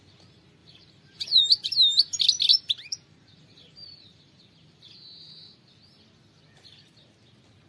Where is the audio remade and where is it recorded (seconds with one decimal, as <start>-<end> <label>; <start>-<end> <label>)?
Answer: 0.0-0.6 recorded; 0.6-1.4 remade; 1.4-2.5 recorded; 2.5-5.7 remade; 5.7-7.7 recorded